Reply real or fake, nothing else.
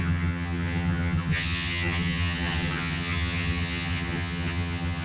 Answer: fake